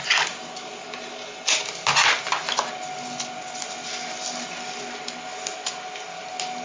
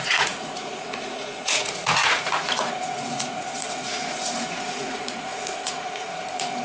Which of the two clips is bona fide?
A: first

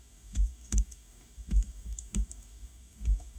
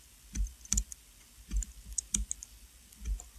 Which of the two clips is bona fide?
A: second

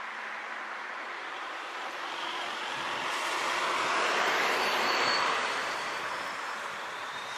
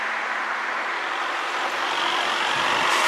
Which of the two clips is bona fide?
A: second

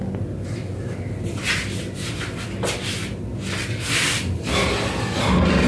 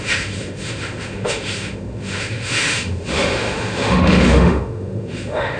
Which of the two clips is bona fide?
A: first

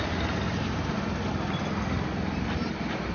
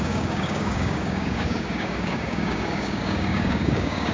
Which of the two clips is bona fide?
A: first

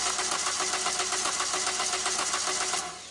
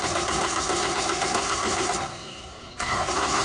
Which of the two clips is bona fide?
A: first